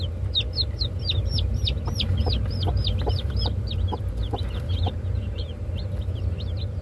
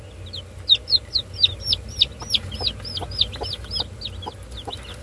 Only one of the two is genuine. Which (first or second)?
second